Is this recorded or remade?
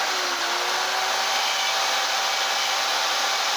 recorded